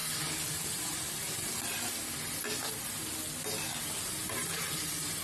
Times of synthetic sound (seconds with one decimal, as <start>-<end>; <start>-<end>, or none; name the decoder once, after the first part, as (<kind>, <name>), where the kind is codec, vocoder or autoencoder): none